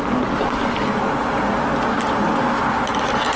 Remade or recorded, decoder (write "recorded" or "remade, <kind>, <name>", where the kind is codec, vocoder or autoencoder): recorded